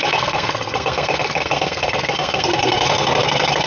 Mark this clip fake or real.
fake